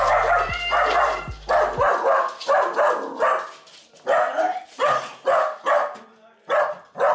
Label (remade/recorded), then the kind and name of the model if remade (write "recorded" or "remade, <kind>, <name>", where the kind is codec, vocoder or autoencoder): recorded